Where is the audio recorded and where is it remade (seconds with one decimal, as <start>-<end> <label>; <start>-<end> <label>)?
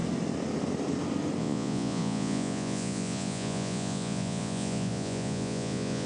0.0-1.4 recorded; 1.4-6.1 remade